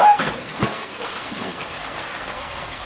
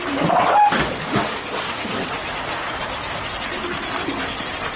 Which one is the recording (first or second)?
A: second